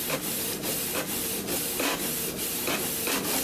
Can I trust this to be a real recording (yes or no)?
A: yes